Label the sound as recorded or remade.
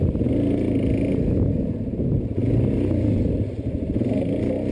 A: recorded